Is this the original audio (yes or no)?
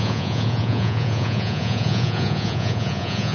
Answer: no